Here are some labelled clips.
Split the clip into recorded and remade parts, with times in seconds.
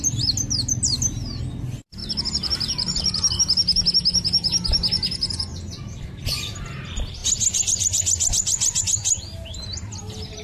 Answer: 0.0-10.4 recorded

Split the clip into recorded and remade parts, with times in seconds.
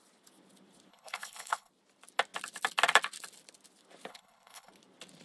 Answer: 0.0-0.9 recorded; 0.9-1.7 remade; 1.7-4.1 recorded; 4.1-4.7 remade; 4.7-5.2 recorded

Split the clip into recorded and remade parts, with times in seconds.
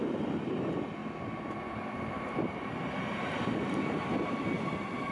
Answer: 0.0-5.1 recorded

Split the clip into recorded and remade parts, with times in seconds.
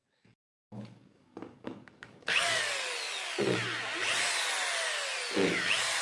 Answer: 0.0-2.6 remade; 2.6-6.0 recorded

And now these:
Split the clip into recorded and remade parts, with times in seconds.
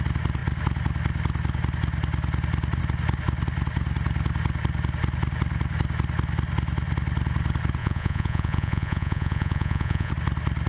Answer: 0.0-7.8 recorded; 7.8-10.1 remade; 10.1-10.7 recorded